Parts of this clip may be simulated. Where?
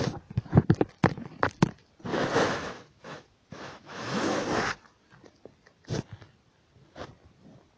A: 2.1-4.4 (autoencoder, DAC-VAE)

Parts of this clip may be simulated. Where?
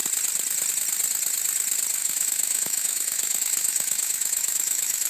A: 2.0-5.1 (autoencoder, DAC-VAE)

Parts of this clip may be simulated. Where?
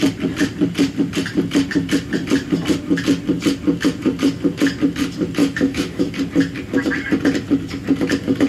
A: 5.4-6.1 (autoencoder, DAC-VAE)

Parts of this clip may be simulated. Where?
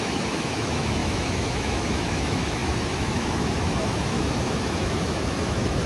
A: 0.0-5.9 (autoencoder, DAC-VAE)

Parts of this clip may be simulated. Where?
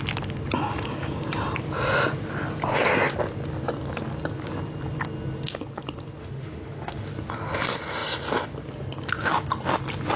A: 6.2-7.1 (autoencoder, DAC-VAE)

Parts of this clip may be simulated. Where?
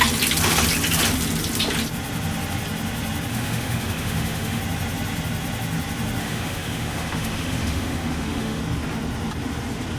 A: 3.3-4.6 (autoencoder, DAC-VAE); 6.2-8.6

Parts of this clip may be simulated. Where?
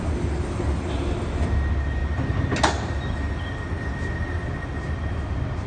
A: none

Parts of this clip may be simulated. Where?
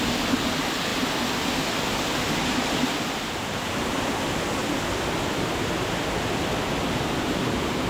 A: none